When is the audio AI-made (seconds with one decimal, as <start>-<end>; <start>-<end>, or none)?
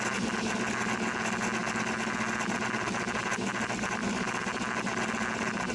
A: none